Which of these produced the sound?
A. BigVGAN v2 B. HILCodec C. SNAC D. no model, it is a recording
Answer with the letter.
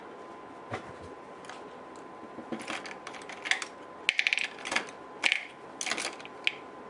D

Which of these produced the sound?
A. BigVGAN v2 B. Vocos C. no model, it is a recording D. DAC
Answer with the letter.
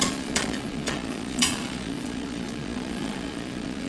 B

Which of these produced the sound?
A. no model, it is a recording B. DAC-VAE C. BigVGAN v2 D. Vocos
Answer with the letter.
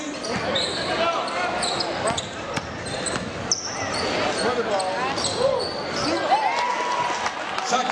A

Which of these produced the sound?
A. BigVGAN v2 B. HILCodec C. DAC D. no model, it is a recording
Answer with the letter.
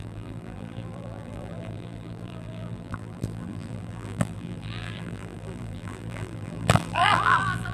A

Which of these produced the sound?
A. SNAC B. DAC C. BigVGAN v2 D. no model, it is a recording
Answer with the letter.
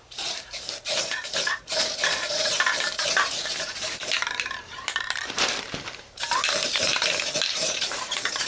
C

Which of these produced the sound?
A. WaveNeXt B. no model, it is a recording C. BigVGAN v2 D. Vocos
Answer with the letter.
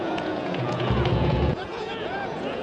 D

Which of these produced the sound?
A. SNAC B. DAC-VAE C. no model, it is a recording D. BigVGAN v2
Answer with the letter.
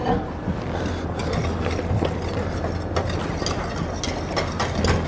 C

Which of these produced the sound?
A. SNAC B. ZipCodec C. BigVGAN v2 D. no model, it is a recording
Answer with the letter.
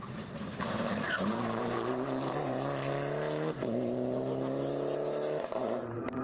C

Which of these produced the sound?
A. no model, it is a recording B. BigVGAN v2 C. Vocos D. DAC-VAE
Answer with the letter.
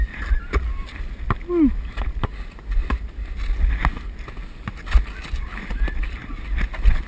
A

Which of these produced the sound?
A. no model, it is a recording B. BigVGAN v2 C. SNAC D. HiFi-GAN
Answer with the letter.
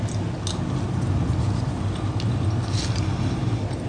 A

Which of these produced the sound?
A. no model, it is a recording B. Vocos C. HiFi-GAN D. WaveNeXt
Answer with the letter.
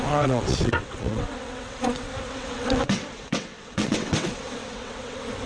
D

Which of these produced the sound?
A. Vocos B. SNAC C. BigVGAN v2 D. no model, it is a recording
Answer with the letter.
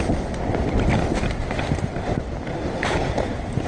C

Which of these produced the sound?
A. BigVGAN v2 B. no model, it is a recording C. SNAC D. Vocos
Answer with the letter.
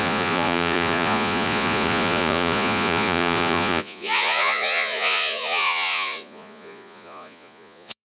D